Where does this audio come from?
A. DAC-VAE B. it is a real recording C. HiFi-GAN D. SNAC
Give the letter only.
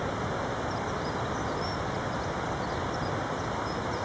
B